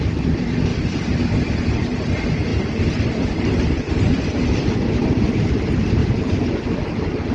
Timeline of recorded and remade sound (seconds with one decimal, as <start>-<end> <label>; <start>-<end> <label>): 0.0-0.7 recorded; 0.7-1.2 remade; 1.2-2.5 recorded; 2.5-5.5 remade; 5.5-6.0 recorded; 6.0-6.6 remade; 6.6-7.3 recorded